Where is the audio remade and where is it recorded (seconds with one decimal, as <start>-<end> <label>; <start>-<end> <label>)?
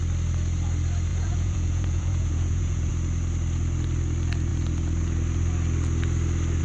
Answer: 0.0-1.1 recorded; 1.1-2.9 remade; 2.9-6.6 recorded